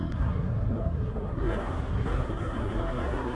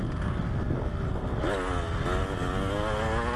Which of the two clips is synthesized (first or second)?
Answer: first